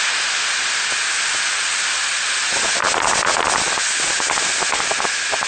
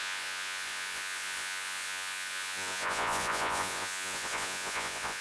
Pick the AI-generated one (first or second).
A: second